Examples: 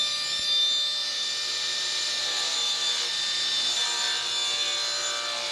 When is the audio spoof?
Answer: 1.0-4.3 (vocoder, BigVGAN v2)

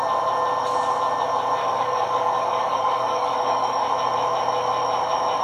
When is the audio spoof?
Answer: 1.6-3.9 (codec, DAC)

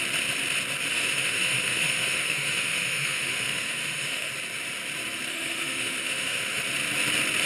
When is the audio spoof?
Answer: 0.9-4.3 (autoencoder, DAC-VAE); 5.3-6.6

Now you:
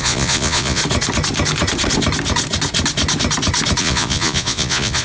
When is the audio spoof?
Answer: 0.0-0.8 (vocoder, Vocos); 3.8-5.0